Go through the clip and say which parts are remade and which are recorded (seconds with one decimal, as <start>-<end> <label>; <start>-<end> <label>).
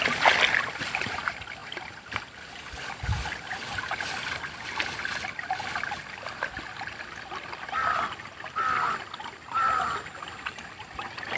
0.0-11.4 recorded